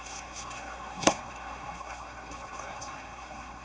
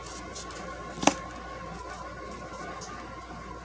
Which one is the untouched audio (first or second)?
second